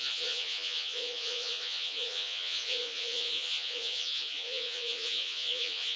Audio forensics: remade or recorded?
remade